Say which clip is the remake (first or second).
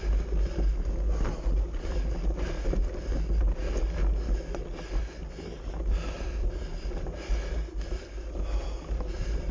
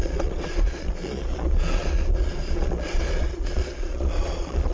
second